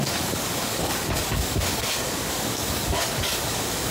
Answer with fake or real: fake